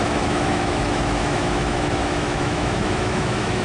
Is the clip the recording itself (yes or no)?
no